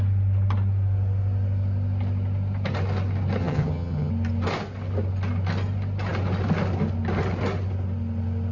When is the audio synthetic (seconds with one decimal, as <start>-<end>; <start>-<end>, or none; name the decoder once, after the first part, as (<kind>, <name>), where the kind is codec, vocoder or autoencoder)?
3.4-4.1 (vocoder, HiFi-GAN)